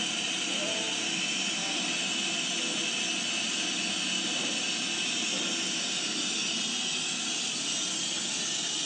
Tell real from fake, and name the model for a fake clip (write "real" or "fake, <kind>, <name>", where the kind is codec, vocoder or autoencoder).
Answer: real